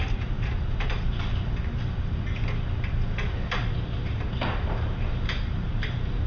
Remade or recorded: remade